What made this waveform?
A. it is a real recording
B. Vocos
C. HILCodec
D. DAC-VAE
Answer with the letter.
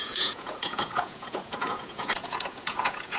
B